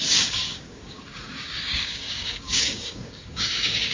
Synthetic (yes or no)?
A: yes